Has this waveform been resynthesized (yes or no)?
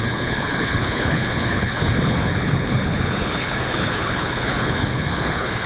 yes